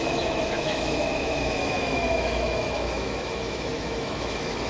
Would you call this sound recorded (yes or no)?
no